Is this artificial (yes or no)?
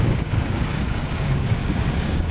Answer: yes